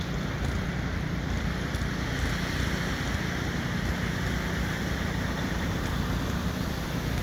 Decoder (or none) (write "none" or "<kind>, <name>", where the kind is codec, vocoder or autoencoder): vocoder, BigVGAN v2